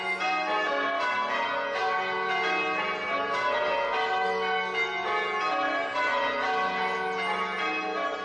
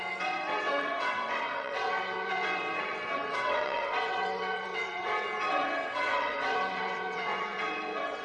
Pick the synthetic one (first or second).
second